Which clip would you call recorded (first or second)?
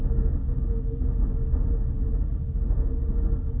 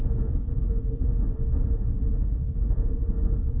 first